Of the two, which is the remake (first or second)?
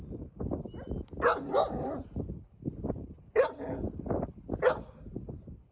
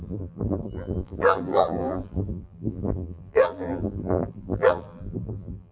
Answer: second